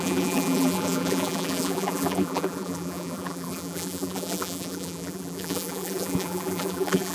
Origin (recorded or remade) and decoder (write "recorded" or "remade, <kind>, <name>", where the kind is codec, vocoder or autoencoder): remade, vocoder, BigVGAN v2